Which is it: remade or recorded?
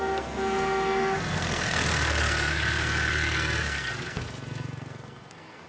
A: remade